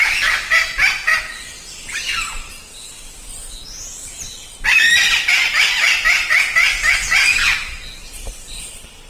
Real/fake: real